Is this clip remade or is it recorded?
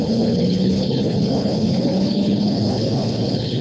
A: remade